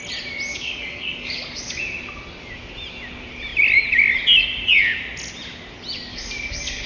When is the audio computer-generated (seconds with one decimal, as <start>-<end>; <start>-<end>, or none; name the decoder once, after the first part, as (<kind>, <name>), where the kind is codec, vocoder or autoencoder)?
0.5-1.8 (codec, DAC); 6.1-6.9